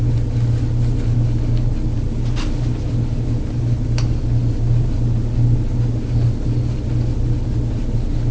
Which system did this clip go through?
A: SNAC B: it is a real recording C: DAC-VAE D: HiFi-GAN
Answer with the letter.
B